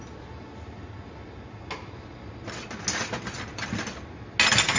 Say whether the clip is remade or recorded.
recorded